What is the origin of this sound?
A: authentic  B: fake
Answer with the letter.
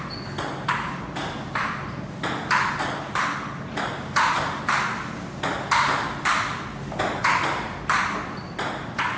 A